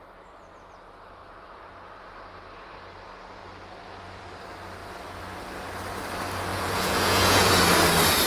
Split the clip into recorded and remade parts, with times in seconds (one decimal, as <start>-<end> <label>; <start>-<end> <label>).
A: 0.0-6.5 recorded; 6.5-7.5 remade; 7.5-8.3 recorded